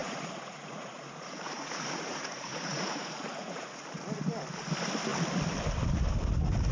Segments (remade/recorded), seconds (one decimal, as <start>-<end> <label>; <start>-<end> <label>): 0.0-4.0 remade; 4.0-6.7 recorded